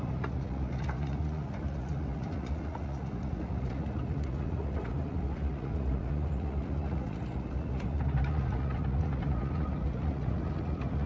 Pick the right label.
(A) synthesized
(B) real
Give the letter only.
A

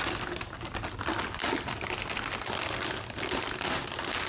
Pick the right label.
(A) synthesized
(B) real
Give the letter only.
B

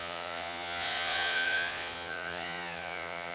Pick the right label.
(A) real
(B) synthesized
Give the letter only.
B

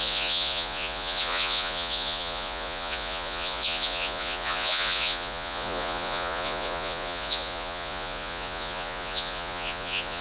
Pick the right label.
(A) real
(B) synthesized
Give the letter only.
B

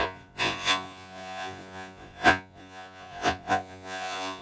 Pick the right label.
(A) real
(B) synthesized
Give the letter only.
B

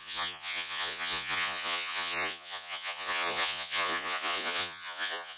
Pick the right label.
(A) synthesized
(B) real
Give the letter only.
A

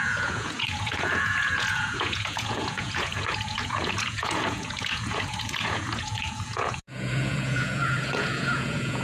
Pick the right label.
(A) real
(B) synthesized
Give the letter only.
B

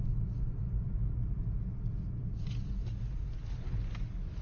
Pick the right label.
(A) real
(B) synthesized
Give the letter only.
A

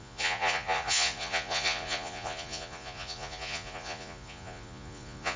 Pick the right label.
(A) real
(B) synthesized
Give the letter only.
B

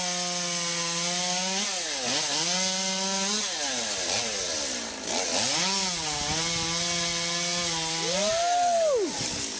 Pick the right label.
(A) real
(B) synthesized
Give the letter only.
A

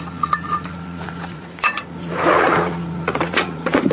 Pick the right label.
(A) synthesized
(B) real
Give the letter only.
A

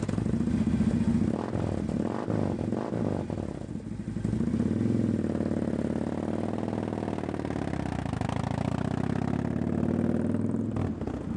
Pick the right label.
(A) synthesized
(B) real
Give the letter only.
B